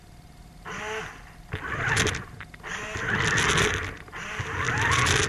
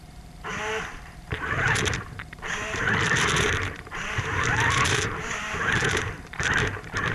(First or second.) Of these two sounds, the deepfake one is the second